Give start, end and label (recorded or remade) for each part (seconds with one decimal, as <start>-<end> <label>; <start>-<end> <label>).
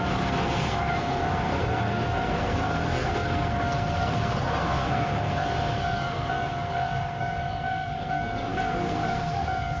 0.0-9.8 remade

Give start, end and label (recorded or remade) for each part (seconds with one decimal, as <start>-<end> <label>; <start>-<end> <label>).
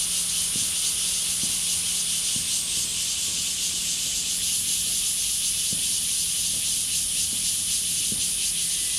0.0-9.0 recorded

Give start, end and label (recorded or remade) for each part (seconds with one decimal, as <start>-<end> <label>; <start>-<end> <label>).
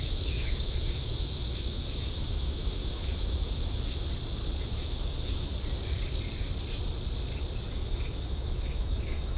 0.0-4.0 remade; 4.0-4.6 recorded; 4.6-5.5 remade; 5.5-7.7 recorded; 7.7-9.4 remade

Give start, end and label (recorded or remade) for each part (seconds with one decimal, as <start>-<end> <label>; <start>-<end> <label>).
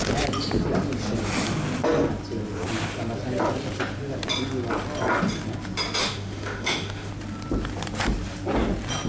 0.0-6.0 recorded; 6.0-7.1 remade; 7.1-9.1 recorded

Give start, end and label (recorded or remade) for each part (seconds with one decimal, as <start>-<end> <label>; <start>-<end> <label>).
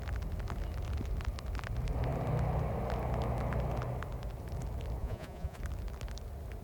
0.0-5.0 recorded; 5.0-5.6 remade; 5.6-6.6 recorded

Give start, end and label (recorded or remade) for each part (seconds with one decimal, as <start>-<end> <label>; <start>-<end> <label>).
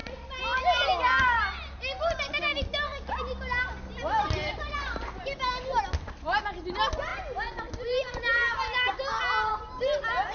0.0-10.3 recorded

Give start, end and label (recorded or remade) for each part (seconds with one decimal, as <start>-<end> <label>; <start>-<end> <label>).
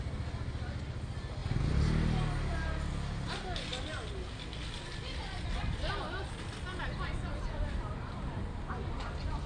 0.0-9.5 recorded